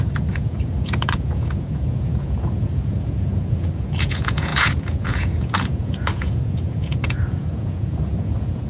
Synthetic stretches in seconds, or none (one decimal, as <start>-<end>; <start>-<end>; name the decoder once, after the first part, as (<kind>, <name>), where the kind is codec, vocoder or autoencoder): 0.0-8.7 (vocoder, Vocos)